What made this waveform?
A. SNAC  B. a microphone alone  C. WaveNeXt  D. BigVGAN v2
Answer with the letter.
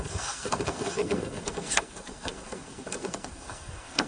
A